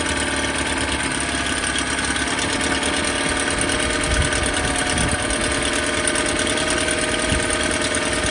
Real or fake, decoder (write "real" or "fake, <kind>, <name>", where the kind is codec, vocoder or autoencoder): real